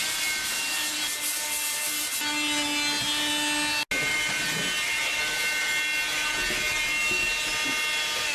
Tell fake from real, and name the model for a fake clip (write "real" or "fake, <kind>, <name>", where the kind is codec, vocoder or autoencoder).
real